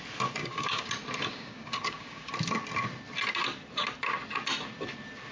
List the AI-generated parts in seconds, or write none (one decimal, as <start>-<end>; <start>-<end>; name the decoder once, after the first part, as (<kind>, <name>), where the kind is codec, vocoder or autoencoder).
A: 0.4-0.9 (codec, DAC); 1.3-2.3

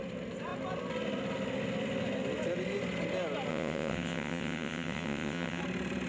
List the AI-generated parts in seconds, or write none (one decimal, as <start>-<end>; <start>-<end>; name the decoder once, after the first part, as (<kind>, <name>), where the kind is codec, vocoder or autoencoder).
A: 3.5-5.6 (vocoder, WaveNeXt)

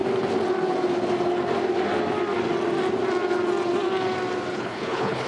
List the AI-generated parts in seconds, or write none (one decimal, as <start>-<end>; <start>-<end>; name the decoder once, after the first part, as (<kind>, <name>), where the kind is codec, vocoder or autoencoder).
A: 4.5-5.3 (codec, HILCodec)

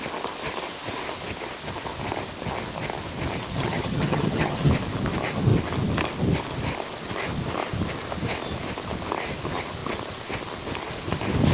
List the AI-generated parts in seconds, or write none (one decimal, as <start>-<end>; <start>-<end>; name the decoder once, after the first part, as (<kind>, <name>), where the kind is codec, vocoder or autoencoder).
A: 3.5-4.7 (vocoder, HiFi-GAN)

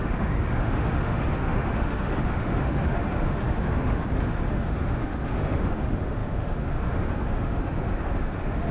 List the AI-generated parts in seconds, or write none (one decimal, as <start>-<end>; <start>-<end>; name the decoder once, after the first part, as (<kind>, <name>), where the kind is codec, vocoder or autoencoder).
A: 0.0-8.7 (autoencoder, DAC-VAE)

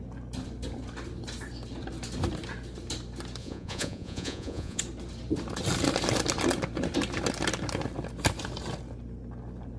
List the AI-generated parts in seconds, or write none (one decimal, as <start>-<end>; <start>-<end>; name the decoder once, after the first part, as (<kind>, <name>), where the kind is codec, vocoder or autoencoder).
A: 3.4-4.8 (vocoder, Vocos)

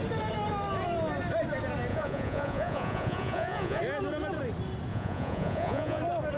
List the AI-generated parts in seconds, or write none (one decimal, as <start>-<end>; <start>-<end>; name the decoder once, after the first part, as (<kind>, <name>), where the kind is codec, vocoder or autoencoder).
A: 1.9-3.8 (vocoder, Vocos); 4.9-6.0

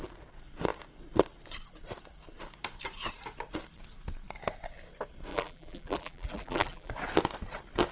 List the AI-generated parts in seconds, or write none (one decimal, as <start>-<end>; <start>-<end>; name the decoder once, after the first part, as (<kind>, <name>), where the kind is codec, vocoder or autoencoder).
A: 5.3-6.9 (vocoder, BigVGAN v2)